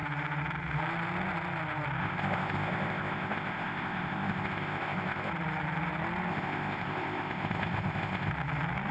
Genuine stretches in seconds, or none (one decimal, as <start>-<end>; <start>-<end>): 0.0-2.0; 5.3-6.3; 8.3-8.9